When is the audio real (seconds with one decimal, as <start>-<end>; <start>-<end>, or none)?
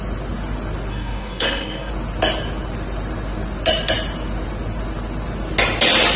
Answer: 0.0-0.9; 1.9-6.2